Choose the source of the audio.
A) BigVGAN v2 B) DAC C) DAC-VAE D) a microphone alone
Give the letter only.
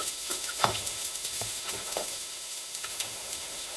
C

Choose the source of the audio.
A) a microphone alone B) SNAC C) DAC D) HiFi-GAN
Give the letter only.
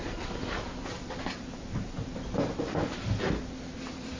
A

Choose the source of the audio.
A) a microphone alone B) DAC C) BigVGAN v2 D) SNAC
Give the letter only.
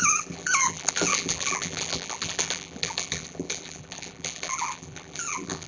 C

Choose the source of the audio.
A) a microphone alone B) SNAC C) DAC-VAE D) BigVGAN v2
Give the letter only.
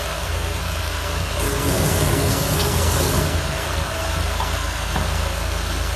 B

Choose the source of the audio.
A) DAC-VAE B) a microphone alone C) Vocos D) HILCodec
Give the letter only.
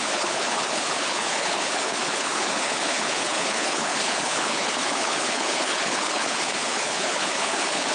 D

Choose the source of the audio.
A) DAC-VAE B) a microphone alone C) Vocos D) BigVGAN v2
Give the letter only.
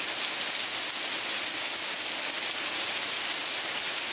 B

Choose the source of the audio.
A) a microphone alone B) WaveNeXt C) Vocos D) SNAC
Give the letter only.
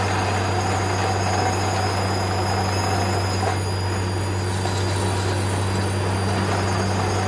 A